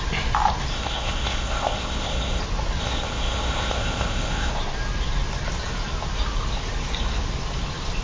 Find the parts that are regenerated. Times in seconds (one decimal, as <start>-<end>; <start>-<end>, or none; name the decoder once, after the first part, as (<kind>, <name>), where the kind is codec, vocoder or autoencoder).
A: 0.7-2.4 (codec, ZipCodec); 2.8-4.5